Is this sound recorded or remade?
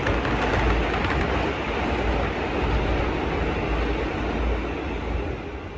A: recorded